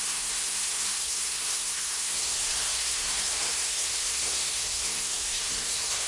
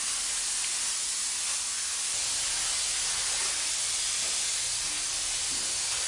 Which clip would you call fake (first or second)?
first